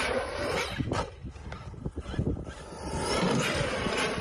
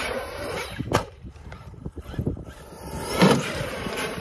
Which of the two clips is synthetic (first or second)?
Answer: second